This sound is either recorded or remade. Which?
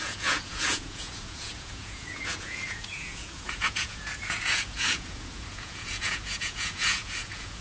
remade